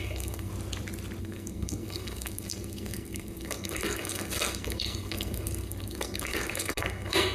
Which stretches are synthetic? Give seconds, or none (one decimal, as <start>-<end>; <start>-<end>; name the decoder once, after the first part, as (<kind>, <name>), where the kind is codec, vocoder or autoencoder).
0.0-0.5 (codec, SNAC); 1.2-7.3